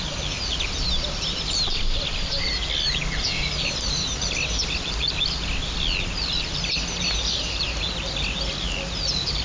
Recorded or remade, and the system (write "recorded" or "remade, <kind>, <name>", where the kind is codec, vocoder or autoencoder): recorded